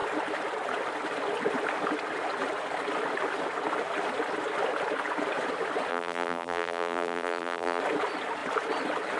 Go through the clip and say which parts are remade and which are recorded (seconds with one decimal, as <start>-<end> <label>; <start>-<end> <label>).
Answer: 0.0-5.9 recorded; 5.9-7.8 remade; 7.8-9.2 recorded